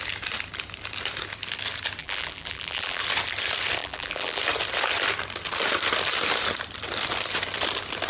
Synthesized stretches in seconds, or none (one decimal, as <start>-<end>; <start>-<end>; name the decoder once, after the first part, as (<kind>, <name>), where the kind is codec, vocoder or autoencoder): 2.0-3.0 (vocoder, BigVGAN v2); 3.8-4.4